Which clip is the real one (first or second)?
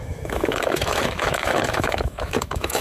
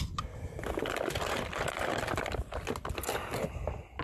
second